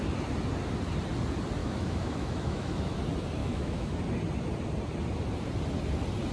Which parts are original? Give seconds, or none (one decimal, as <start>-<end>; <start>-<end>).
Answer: 0.0-1.6; 3.0-3.4; 4.0-6.3